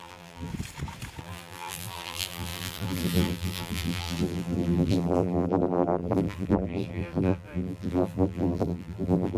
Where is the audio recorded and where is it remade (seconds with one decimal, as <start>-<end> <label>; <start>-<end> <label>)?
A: 0.0-0.5 remade; 0.5-1.2 recorded; 1.2-9.4 remade